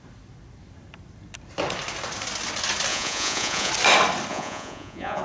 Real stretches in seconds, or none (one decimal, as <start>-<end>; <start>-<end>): 0.0-2.9; 3.7-4.3